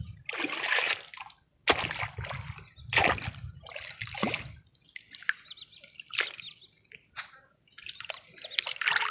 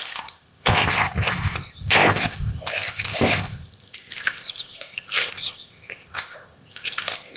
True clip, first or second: first